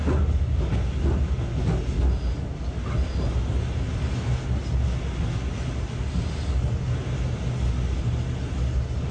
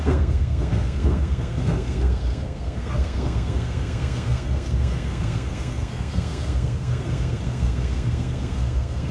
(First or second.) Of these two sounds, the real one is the first